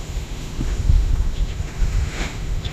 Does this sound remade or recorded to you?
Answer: remade